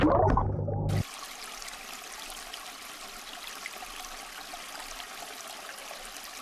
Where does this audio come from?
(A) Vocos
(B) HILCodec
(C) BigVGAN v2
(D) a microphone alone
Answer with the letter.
D